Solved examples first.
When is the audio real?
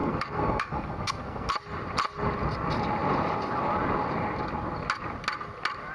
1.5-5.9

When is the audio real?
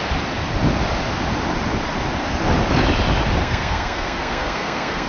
0.0-3.4